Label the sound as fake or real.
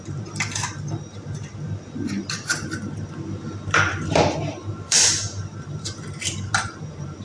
fake